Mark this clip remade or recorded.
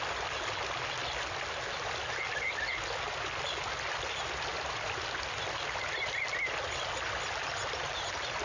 recorded